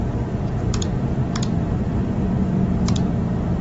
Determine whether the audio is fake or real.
fake